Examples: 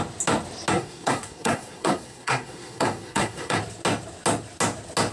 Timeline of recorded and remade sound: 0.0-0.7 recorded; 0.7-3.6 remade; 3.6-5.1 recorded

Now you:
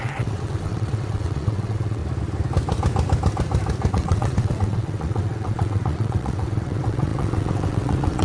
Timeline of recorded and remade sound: 0.0-2.0 remade; 2.0-3.9 recorded; 3.9-8.2 remade

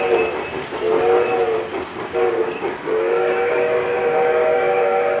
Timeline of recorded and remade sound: 0.0-1.9 recorded; 1.9-5.2 remade

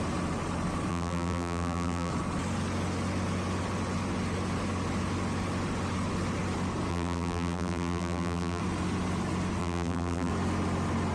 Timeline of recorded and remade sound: 0.0-0.9 recorded; 0.9-2.1 remade; 2.1-6.9 recorded; 6.9-8.6 remade; 8.6-9.6 recorded; 9.6-10.3 remade; 10.3-11.1 recorded

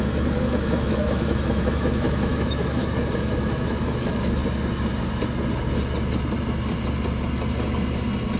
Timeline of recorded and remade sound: 0.0-4.4 remade; 4.4-8.4 recorded

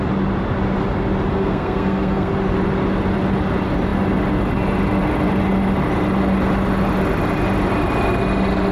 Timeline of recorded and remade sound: 0.0-1.3 recorded; 1.3-2.3 remade; 2.3-8.7 recorded

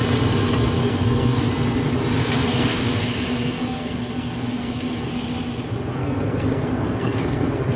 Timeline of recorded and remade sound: 0.0-0.8 recorded; 0.8-1.5 remade; 1.5-2.2 recorded; 2.2-5.1 remade; 5.1-6.0 recorded; 6.0-7.8 remade

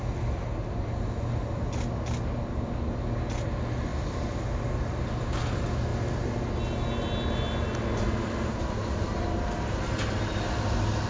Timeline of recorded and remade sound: 0.0-11.1 recorded